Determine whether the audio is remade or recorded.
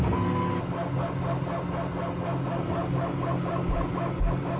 recorded